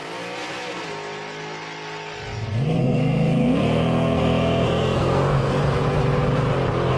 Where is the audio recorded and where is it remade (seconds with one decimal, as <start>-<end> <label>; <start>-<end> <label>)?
0.0-2.8 recorded; 2.8-5.6 remade; 5.6-7.0 recorded